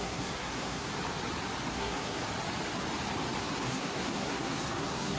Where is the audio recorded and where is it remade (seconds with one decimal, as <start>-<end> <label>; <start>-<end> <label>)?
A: 0.0-0.9 remade; 0.9-1.7 recorded; 1.7-2.2 remade; 2.2-3.4 recorded; 3.4-5.2 remade